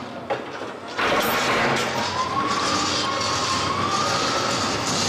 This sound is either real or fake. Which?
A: real